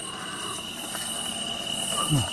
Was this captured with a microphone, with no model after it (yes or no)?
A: yes